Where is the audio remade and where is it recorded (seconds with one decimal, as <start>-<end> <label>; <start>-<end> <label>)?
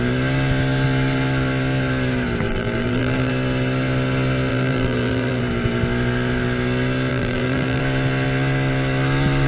0.0-2.5 recorded; 2.5-3.3 remade; 3.3-4.5 recorded; 4.5-5.4 remade; 5.4-7.1 recorded; 7.1-7.8 remade; 7.8-9.5 recorded